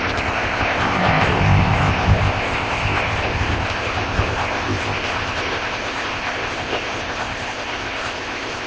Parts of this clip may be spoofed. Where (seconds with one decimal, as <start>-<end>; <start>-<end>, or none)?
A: 0.0-8.7